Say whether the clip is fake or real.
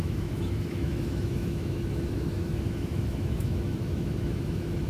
fake